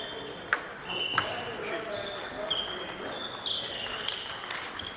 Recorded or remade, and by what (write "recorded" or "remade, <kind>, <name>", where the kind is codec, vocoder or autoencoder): recorded